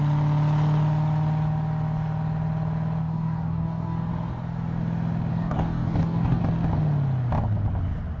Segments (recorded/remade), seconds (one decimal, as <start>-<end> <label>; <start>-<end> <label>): 0.0-3.0 recorded; 3.0-4.1 remade; 4.1-5.3 recorded; 5.3-6.4 remade; 6.4-8.2 recorded